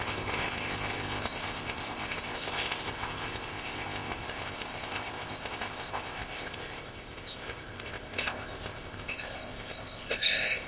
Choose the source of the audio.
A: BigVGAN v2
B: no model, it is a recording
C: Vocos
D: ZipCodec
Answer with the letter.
D